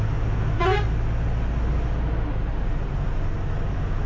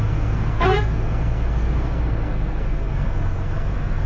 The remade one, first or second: second